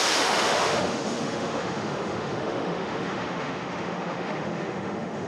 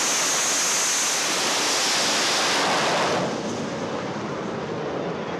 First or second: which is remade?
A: first